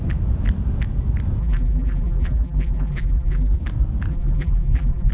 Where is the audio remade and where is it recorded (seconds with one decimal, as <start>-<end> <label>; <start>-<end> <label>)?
0.0-1.4 recorded; 1.4-3.6 remade; 3.6-4.1 recorded; 4.1-5.1 remade